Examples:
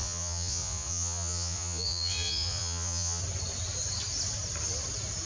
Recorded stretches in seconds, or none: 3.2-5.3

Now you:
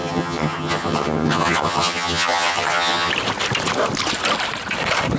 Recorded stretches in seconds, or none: 3.1-5.2

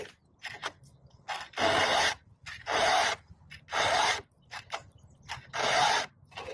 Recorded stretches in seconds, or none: 0.0-0.5; 1.2-1.9; 5.2-6.5

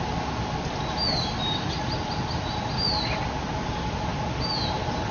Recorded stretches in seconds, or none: 0.0-5.1

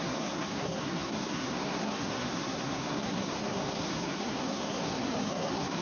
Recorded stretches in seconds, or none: none

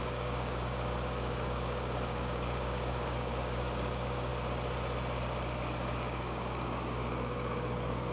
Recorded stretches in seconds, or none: 4.3-5.6

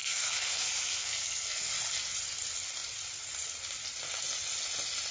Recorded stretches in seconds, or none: 1.7-5.1